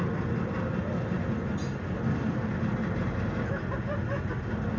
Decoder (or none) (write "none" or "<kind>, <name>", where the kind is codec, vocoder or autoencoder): none